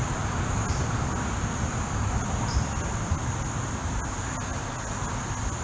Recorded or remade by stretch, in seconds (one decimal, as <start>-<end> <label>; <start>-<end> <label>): 0.0-5.6 recorded